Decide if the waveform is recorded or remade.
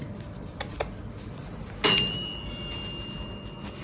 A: recorded